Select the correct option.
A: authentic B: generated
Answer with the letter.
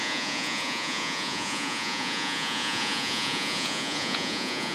B